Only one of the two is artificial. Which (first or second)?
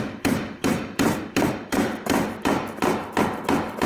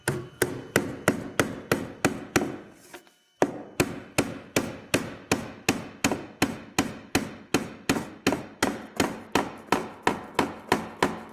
first